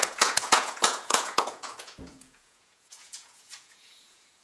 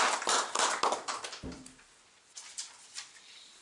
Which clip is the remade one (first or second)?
first